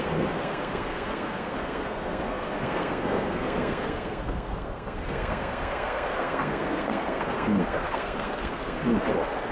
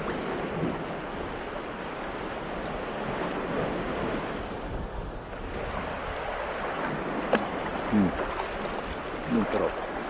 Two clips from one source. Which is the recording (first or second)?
second